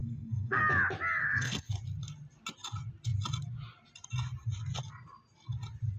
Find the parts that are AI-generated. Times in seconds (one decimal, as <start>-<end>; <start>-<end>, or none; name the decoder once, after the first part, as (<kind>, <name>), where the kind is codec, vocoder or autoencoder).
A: 0.0-0.6 (codec, SNAC); 1.2-1.7